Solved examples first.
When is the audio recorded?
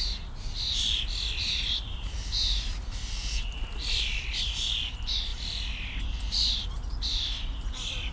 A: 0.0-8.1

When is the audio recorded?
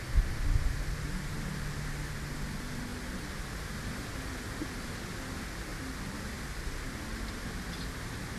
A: 0.0-8.4